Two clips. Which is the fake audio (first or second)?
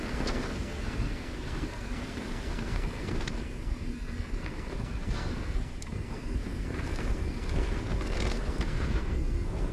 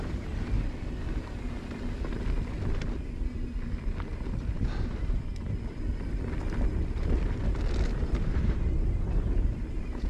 first